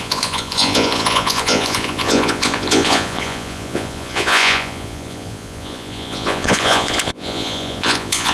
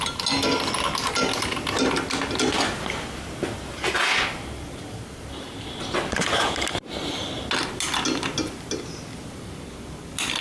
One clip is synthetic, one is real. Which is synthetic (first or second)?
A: first